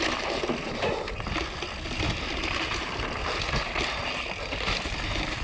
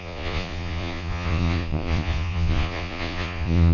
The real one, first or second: first